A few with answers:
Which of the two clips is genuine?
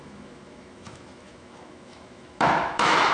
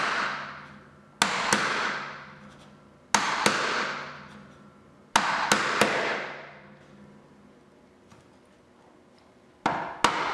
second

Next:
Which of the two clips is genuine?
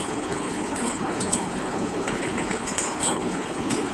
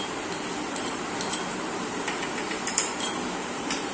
second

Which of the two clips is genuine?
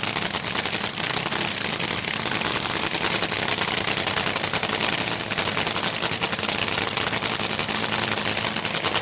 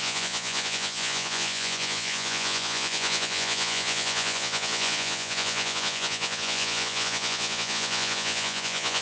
first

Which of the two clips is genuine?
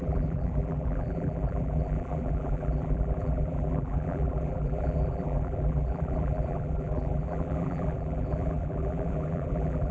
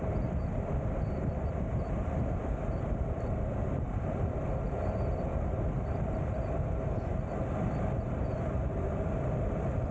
second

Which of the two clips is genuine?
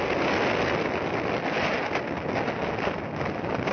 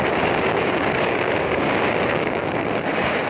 first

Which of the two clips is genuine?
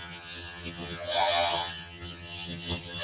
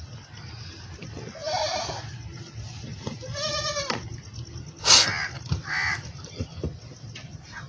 second